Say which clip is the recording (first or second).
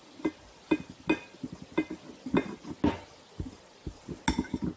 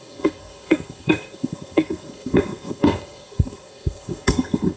first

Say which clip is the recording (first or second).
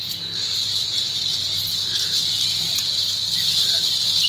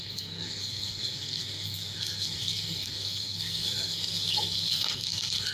first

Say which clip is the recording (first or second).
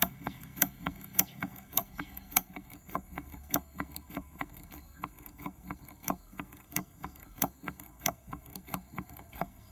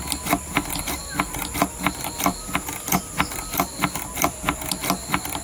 second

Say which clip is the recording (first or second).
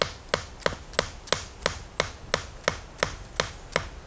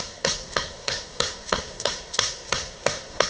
first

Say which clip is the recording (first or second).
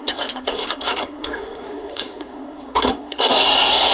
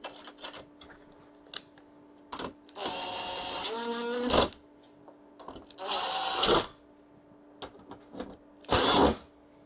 second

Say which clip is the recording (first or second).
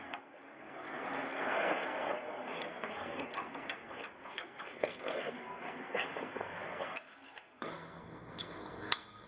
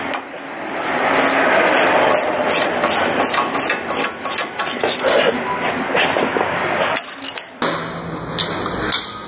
second